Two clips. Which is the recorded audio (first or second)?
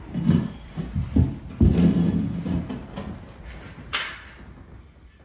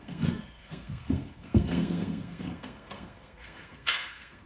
first